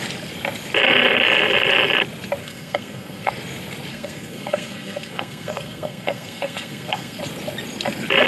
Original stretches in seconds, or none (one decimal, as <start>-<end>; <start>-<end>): 0.0-2.4; 3.3-3.9; 7.2-8.3